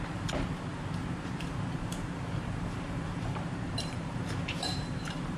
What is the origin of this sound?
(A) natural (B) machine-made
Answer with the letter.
B